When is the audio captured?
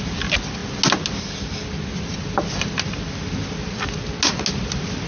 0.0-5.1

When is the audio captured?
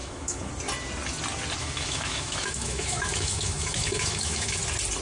0.5-1.6; 4.6-5.0